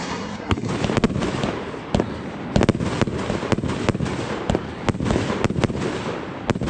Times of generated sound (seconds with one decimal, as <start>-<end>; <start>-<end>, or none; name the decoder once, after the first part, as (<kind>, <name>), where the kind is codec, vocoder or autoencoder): 0.0-0.7 (codec, SNAC)